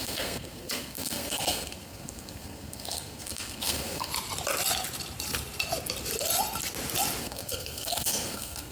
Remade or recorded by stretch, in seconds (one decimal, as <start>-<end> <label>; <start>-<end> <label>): 0.0-4.1 remade; 4.1-7.2 recorded; 7.2-8.7 remade